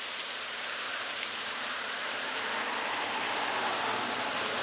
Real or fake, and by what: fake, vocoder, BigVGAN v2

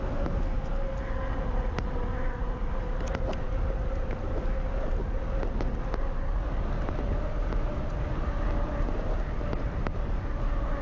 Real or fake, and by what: real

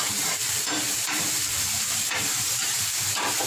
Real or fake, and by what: fake, vocoder, BigVGAN v2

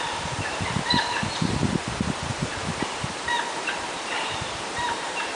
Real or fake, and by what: fake, vocoder, BigVGAN v2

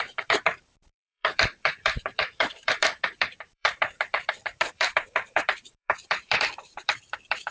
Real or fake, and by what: fake, vocoder, BigVGAN v2